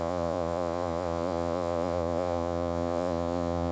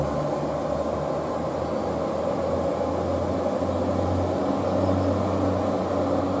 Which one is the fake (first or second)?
first